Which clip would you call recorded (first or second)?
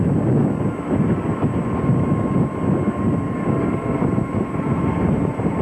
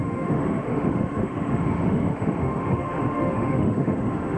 first